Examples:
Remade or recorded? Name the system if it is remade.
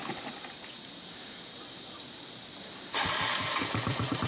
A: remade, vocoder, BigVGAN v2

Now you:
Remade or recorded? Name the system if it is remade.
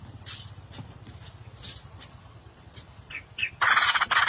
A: remade, vocoder, BigVGAN v2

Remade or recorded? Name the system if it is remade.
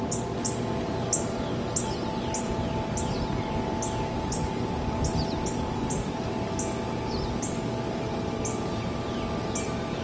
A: recorded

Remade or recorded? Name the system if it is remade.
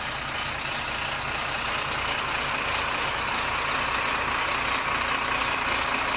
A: recorded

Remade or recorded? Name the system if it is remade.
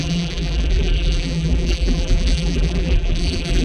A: remade, vocoder, BigVGAN v2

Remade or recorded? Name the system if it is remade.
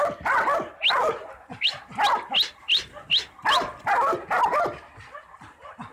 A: recorded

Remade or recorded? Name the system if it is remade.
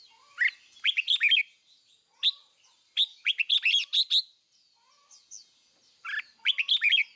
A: recorded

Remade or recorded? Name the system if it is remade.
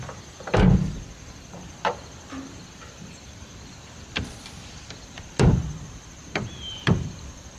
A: remade, vocoder, BigVGAN v2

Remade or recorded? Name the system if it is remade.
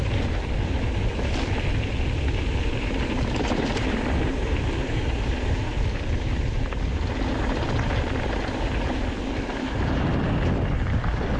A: recorded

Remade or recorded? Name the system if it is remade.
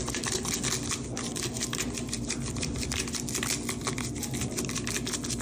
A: recorded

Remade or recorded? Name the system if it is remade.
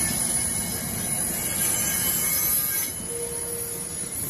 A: recorded